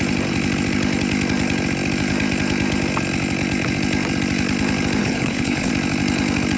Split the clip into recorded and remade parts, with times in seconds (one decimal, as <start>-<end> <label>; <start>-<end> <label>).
0.0-5.0 recorded; 5.0-5.7 remade; 5.7-6.6 recorded